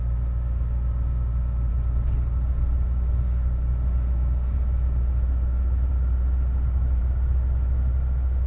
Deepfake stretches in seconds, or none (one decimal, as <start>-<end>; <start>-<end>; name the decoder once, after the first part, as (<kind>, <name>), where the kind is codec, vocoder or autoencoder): none